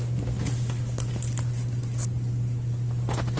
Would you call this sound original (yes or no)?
yes